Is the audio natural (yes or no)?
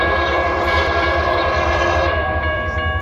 no